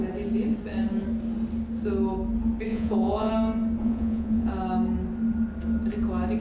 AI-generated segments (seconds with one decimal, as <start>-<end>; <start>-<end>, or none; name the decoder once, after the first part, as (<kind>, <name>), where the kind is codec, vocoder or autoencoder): 2.7-3.3 (vocoder, Vocos); 3.8-4.5